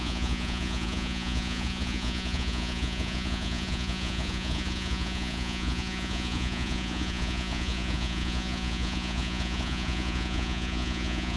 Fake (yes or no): yes